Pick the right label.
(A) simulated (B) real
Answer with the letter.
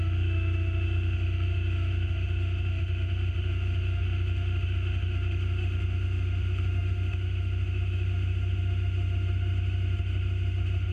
A